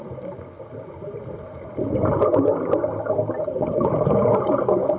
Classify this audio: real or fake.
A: real